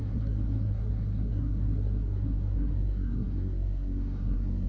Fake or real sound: fake